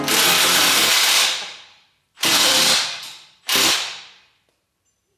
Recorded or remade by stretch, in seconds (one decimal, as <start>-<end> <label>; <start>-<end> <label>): 0.0-0.6 recorded; 0.6-3.4 remade; 3.4-5.2 recorded